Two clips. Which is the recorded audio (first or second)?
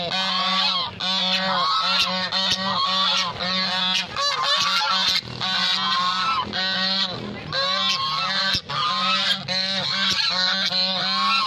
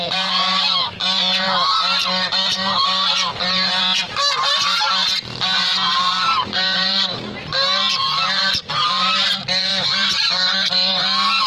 first